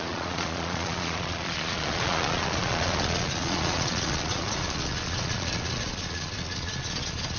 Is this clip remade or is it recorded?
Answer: remade